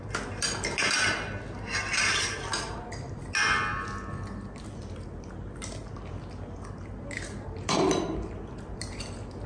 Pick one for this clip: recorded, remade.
recorded